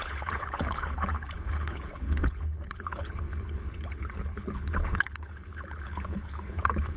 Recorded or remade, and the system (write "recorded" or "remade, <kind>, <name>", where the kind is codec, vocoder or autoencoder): remade, codec, HILCodec